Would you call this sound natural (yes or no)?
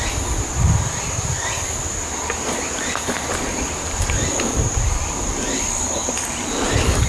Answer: no